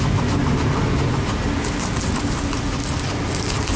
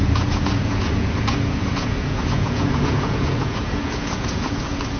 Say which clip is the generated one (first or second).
second